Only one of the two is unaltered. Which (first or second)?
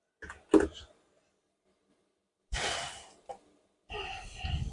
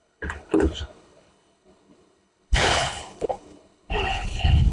first